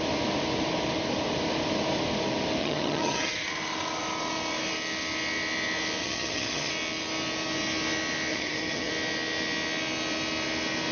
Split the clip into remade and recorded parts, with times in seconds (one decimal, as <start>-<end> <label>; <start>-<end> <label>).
0.0-2.6 recorded; 2.6-3.5 remade; 3.5-6.0 recorded; 6.0-6.7 remade; 6.7-8.3 recorded; 8.3-8.9 remade; 8.9-10.9 recorded